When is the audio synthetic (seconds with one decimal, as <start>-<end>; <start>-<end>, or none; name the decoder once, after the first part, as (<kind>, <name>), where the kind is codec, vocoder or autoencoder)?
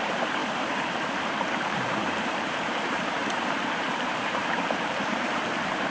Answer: 0.0-0.4 (vocoder, BigVGAN v2); 1.5-3.2; 3.9-5.9